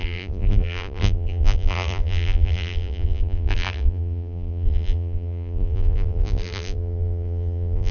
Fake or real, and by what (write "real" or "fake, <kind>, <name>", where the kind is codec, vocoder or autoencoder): fake, vocoder, BigVGAN v2